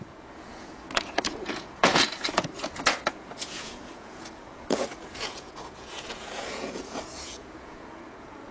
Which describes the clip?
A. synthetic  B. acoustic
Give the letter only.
A